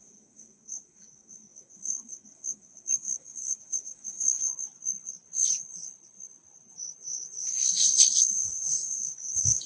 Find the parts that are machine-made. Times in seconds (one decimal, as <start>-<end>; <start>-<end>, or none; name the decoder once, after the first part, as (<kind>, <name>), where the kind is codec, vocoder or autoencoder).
0.0-4.5 (codec, DAC); 8.2-9.7